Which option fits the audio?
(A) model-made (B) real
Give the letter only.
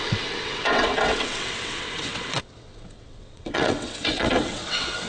A